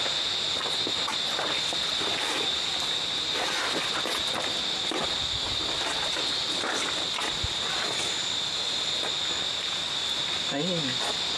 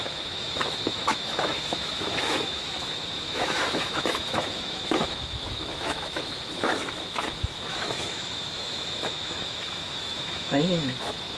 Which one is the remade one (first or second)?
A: second